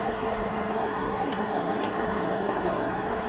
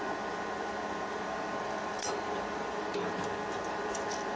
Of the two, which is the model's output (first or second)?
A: first